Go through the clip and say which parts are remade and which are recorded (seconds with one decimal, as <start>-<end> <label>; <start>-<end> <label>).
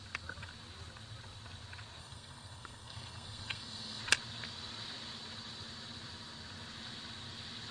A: 0.0-2.0 recorded; 2.0-4.0 remade; 4.0-7.7 recorded